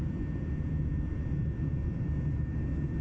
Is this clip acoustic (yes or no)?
no